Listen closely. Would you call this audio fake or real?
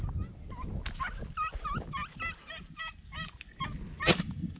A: real